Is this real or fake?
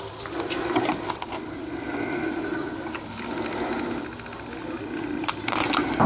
real